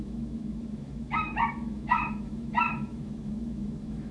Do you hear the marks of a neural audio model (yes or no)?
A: yes